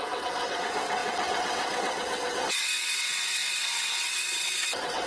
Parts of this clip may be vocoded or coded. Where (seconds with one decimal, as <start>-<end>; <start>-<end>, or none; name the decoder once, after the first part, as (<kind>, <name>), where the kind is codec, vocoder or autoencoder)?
0.0-5.1 (vocoder, WaveNeXt)